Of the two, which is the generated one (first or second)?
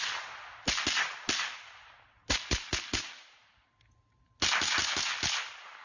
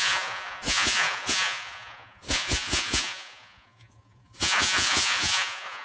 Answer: second